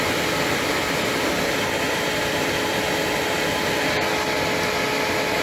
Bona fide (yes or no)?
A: yes